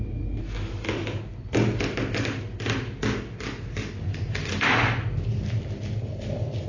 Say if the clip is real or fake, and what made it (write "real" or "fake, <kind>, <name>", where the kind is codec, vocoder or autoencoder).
real